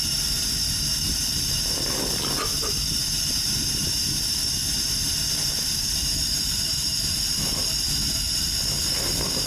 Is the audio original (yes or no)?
yes